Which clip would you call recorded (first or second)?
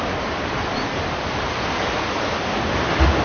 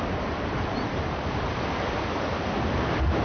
first